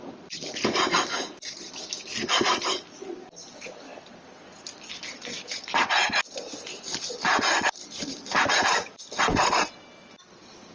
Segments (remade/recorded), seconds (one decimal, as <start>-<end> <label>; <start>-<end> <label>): 0.0-10.7 recorded